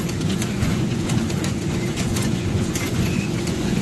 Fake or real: fake